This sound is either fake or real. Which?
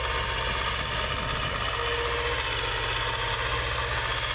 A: real